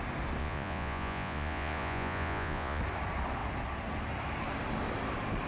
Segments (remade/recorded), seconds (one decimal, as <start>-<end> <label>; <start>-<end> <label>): 0.0-0.4 recorded; 0.4-2.8 remade; 2.8-5.5 recorded